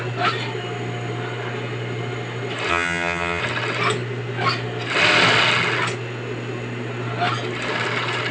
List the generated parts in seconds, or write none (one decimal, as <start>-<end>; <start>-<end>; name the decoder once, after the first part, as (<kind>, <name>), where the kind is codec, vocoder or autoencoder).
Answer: 2.7-3.4 (vocoder, HiFi-GAN)